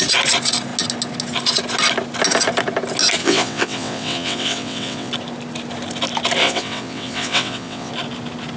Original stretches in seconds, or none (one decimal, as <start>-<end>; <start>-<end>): 0.0-3.2; 5.1-6.4; 7.9-8.6